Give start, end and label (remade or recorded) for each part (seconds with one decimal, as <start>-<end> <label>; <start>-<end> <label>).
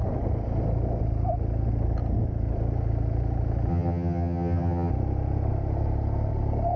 0.0-3.7 recorded; 3.7-4.9 remade; 4.9-6.8 recorded